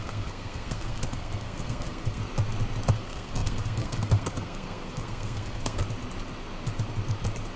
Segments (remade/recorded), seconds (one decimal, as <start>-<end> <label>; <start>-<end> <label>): 0.0-2.2 remade; 2.2-2.9 recorded; 2.9-5.8 remade; 5.8-7.6 recorded